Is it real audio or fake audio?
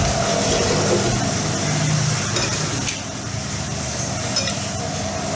real